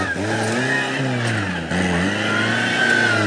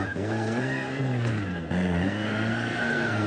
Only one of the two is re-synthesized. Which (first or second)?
second